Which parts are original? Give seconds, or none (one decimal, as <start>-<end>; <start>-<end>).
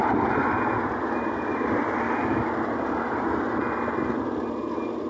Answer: 0.0-5.1